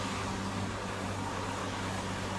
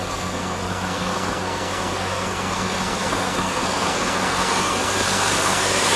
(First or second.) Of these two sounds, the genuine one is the first